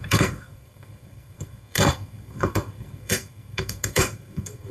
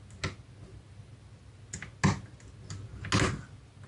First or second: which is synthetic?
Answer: first